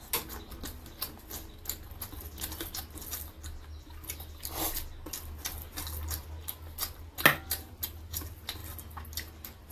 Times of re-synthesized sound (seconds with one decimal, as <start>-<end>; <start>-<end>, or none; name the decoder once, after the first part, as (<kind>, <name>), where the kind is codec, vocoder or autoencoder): 8.6-9.7 (vocoder, BigVGAN v2)